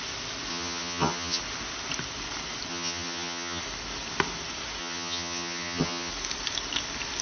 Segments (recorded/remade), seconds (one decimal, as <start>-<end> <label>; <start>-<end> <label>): 0.0-0.5 recorded; 0.5-1.4 remade; 1.4-2.7 recorded; 2.7-3.6 remade; 3.6-4.8 recorded; 4.8-6.1 remade; 6.1-7.2 recorded